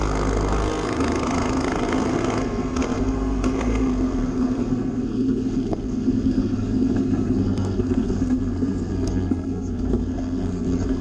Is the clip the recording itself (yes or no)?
no